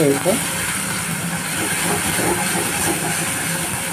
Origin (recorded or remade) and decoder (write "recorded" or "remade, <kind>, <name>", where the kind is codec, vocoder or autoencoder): recorded